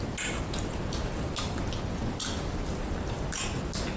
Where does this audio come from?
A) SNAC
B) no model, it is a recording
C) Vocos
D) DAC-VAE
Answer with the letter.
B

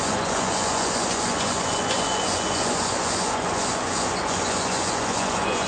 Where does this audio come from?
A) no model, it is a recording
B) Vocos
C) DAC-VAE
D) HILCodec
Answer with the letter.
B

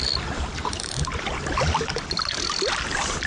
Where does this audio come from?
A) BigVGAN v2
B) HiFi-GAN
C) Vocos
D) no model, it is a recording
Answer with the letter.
D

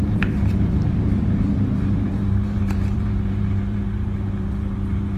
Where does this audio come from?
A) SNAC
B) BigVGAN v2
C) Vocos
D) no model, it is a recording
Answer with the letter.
B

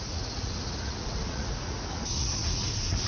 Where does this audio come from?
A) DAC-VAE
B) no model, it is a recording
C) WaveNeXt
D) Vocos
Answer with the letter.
D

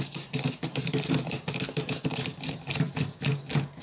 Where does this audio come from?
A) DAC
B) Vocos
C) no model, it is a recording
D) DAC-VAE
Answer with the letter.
C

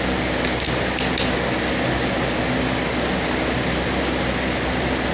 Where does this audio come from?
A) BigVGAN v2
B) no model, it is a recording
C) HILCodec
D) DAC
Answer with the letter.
B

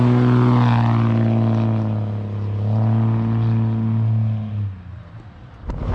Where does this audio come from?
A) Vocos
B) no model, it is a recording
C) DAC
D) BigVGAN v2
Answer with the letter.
B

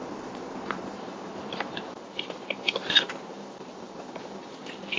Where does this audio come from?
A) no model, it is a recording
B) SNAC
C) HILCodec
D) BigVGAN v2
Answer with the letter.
D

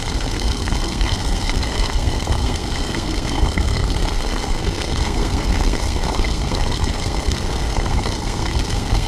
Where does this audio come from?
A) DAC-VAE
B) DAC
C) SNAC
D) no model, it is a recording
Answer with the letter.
C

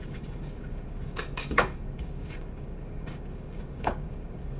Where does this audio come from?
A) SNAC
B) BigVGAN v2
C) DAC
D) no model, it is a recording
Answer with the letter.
C